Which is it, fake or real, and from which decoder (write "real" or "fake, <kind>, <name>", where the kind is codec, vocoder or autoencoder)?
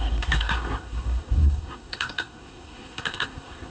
fake, codec, SNAC